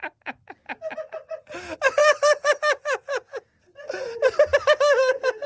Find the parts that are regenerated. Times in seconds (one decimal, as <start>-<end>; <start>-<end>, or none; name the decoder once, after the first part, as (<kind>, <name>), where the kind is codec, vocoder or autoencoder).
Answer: none